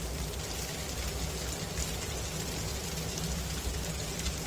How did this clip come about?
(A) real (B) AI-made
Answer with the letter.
A